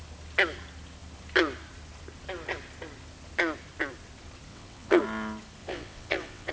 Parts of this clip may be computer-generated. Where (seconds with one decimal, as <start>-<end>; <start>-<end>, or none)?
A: 4.5-5.0; 5.6-6.5